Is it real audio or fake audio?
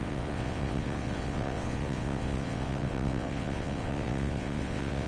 fake